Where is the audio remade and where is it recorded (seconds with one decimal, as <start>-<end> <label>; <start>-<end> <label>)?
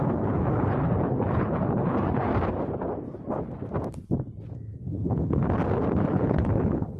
0.0-2.3 remade; 2.3-4.9 recorded; 4.9-5.6 remade; 5.6-6.1 recorded; 6.1-7.0 remade